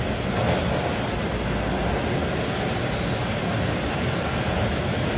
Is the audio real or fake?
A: real